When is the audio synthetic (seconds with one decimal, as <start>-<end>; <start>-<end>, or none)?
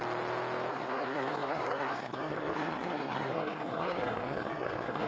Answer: 0.7-5.1